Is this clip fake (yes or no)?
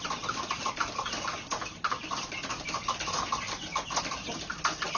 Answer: no